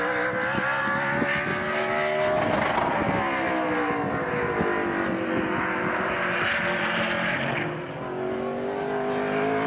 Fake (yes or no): no